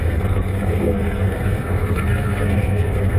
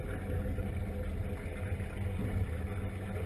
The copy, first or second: first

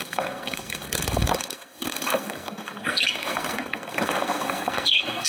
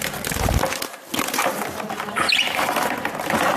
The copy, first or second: first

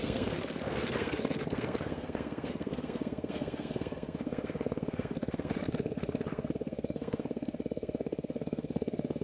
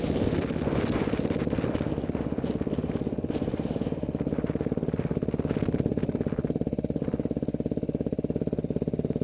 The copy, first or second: first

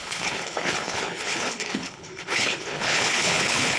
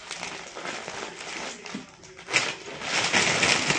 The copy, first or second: first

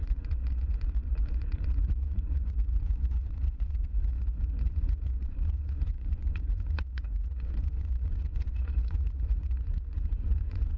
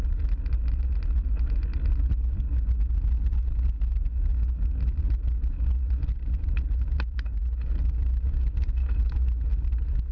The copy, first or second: first